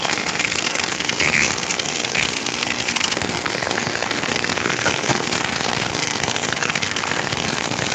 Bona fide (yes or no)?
no